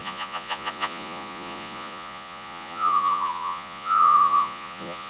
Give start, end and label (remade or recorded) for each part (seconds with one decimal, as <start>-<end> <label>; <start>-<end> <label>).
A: 0.0-5.1 remade